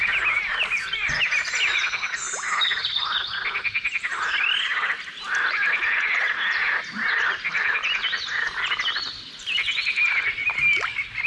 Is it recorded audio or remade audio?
remade